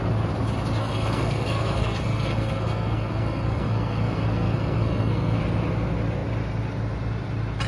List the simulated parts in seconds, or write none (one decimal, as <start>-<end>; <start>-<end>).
0.8-5.4